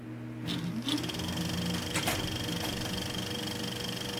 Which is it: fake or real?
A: real